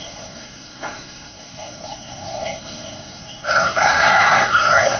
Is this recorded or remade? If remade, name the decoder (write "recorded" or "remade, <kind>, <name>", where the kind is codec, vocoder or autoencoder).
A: remade, codec, SNAC